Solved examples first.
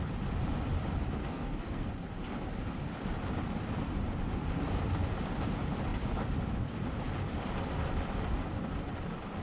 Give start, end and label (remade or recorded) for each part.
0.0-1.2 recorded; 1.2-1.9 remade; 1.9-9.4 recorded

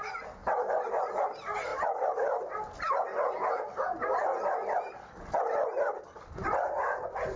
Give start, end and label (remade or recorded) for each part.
0.0-0.4 recorded; 0.4-1.2 remade; 1.2-1.7 recorded; 1.7-2.7 remade; 2.7-7.4 recorded

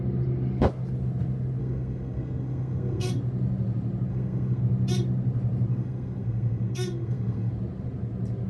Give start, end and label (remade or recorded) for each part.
0.0-1.6 recorded; 1.6-3.1 remade; 3.1-4.1 recorded; 4.1-4.6 remade; 4.6-5.7 recorded; 5.7-7.5 remade; 7.5-8.5 recorded

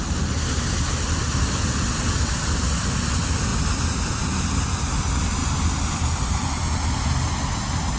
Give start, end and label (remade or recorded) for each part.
0.0-8.0 recorded

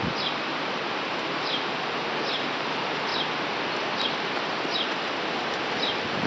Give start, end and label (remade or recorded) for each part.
0.0-0.5 recorded; 0.5-1.7 remade; 1.7-6.3 recorded

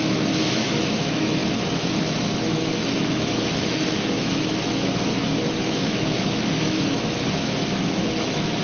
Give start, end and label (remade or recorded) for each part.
0.0-8.6 remade

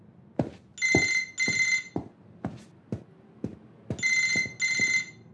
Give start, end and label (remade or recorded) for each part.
0.0-5.3 recorded